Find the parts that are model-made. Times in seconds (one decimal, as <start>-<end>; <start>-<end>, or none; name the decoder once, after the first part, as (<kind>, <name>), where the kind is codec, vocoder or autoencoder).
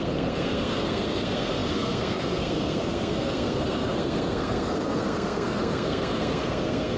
0.0-7.0 (codec, SNAC)